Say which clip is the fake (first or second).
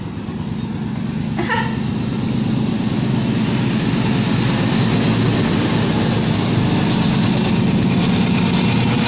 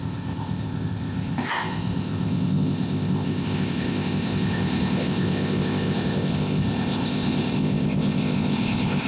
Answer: second